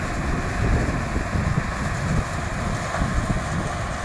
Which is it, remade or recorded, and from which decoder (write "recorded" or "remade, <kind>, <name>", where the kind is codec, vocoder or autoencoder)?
recorded